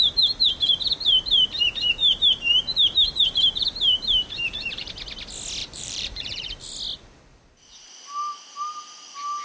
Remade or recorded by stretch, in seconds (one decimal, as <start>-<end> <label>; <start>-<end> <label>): 0.0-2.0 recorded; 2.0-4.9 remade; 4.9-5.6 recorded; 5.6-6.6 remade; 6.6-9.4 recorded